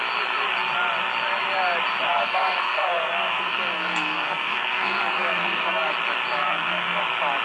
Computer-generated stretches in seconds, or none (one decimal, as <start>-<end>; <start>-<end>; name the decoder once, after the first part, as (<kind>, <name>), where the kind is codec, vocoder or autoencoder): 2.1-5.9 (codec, SNAC); 6.4-7.0